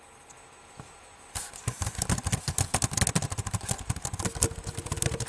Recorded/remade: recorded